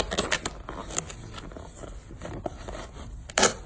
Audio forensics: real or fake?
real